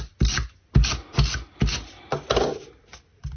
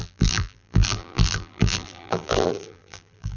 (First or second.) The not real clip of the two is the second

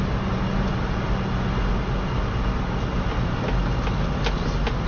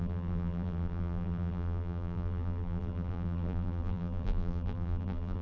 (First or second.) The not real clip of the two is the second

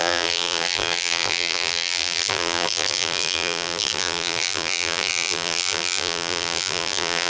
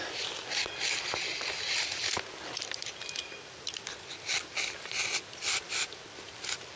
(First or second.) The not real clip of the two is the first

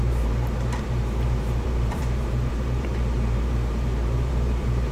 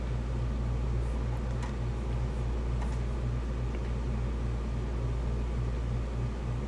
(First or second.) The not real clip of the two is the first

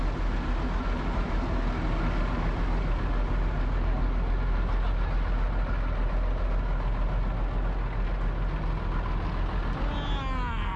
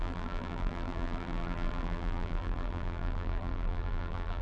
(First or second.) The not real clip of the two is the second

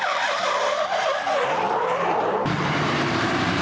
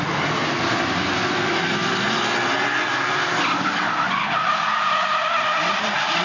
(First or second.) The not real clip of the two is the first